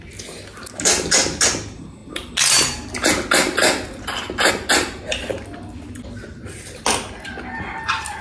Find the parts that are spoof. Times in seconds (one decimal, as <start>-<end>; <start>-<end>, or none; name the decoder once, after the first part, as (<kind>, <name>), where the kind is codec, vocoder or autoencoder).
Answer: none